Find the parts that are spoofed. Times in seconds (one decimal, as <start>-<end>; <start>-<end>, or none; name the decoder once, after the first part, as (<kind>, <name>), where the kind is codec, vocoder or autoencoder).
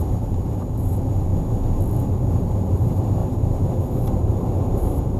0.0-1.3 (vocoder, BigVGAN v2); 2.1-3.2; 4.2-5.2